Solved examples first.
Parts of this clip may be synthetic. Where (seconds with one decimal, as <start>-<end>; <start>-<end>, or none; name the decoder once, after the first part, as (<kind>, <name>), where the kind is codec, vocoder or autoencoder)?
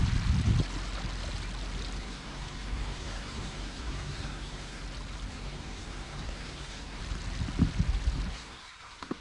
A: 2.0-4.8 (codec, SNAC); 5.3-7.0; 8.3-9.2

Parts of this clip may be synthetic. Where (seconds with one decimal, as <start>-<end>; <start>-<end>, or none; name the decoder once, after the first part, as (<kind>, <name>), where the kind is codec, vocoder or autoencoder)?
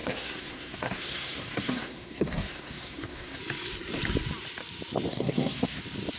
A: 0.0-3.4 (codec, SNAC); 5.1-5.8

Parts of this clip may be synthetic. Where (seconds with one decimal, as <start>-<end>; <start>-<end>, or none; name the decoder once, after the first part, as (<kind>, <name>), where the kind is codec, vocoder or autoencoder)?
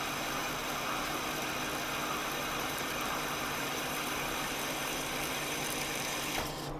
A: 0.4-1.5 (vocoder, BigVGAN v2); 2.2-6.3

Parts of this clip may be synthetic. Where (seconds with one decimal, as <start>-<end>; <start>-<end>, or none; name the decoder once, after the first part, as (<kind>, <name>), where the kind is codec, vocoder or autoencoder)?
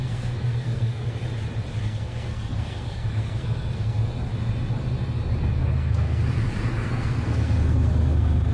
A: 0.0-1.2 (codec, SNAC); 1.8-4.1; 5.5-6.2; 6.7-8.5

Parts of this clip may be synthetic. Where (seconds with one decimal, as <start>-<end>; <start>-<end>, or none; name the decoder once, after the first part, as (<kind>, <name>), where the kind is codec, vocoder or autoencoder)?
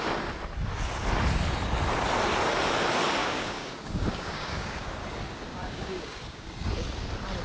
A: 3.2-4.9 (codec, DAC); 5.5-6.5